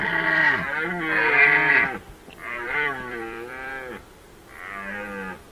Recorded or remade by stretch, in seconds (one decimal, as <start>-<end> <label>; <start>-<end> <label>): 0.0-2.4 recorded; 2.4-3.7 remade; 3.7-5.5 recorded